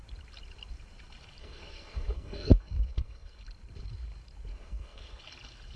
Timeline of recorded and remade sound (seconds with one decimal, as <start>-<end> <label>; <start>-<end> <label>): 0.0-1.4 recorded; 1.4-3.4 remade; 3.4-4.5 recorded; 4.5-5.2 remade; 5.2-5.8 recorded